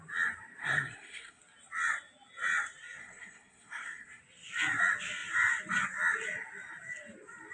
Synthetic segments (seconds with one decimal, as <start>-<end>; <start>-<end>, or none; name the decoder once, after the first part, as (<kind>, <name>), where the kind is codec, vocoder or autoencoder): 0.6-1.4 (codec, SNAC); 3.0-4.2